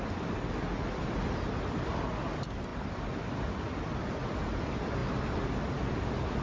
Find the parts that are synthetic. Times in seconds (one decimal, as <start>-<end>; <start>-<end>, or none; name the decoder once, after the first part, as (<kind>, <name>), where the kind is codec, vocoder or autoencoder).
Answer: none